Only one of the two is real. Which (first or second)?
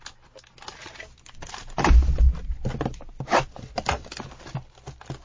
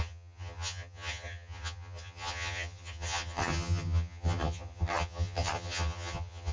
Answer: first